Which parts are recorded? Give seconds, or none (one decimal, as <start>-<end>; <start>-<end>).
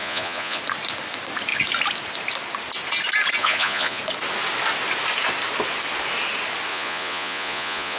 0.6-3.4; 4.0-6.7